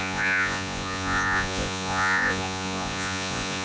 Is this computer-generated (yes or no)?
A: yes